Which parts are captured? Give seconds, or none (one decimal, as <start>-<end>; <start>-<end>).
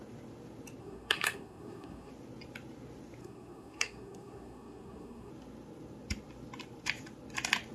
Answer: 0.0-0.8; 2.1-3.2; 5.3-7.7